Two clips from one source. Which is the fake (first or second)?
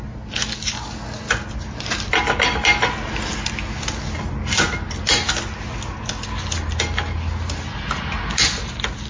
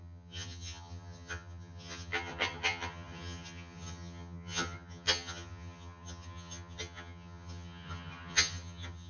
second